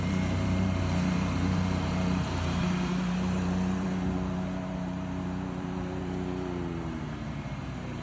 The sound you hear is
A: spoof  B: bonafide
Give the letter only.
A